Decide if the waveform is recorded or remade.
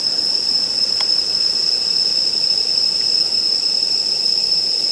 remade